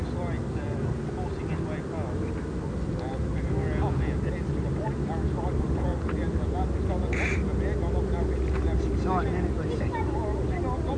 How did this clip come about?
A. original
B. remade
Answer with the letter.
A